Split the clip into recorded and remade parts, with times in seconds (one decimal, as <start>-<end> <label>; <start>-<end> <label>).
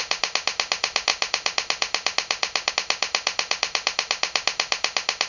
0.0-5.3 recorded